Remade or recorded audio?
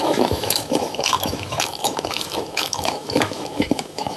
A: remade